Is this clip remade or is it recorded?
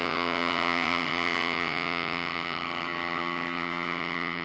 remade